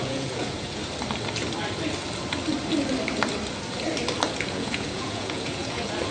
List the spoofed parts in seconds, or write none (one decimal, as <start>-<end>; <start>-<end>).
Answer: 0.0-0.8; 4.5-6.1